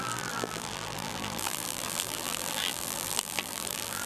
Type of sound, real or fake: fake